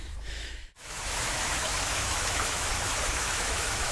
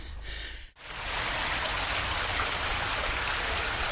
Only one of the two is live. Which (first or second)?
second